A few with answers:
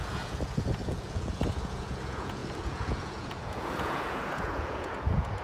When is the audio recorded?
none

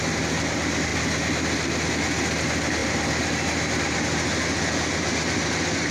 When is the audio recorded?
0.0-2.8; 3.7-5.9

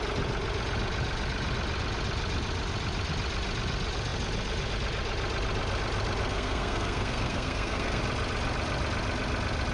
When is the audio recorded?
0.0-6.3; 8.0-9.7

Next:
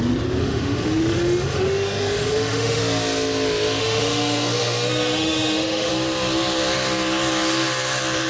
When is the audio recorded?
0.0-0.4; 2.8-3.8; 5.9-8.3

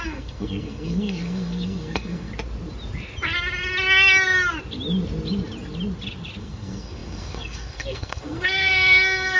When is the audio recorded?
2.3-6.4

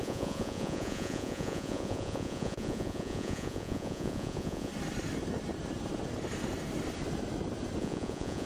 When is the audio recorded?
4.7-7.8

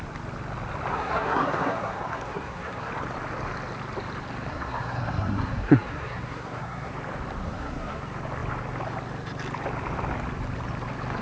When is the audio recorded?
0.0-0.9; 2.9-4.5; 6.9-7.4; 8.0-11.2

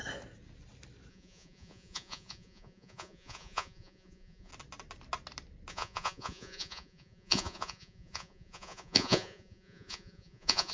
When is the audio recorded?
0.0-1.1; 4.5-5.7